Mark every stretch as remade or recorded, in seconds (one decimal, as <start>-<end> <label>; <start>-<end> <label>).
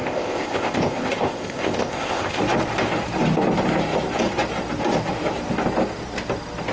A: 0.0-2.4 remade; 2.4-6.7 recorded